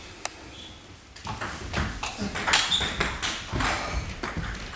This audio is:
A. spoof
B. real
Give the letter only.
B